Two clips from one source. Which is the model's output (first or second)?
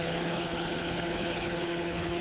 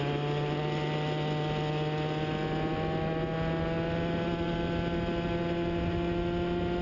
first